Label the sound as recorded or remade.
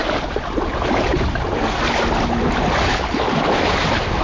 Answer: recorded